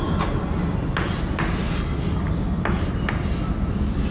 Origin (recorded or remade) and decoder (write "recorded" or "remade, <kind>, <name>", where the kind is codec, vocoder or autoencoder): recorded